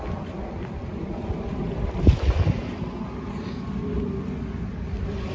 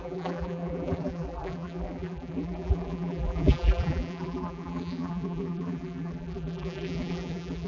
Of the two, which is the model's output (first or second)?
second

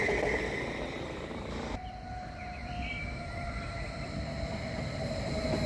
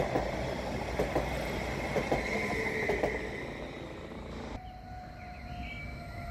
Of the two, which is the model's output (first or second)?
first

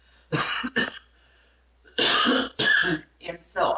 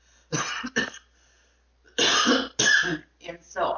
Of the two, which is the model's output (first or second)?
first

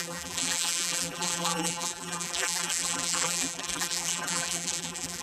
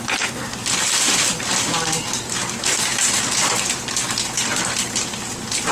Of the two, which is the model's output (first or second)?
first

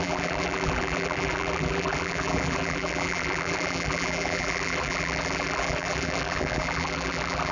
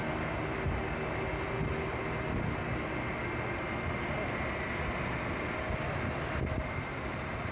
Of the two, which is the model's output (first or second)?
first